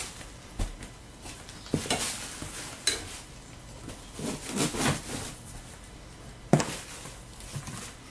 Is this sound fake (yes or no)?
no